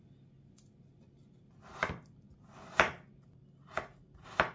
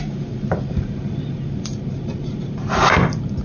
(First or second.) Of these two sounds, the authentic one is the first